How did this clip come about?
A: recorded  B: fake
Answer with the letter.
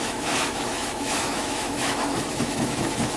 B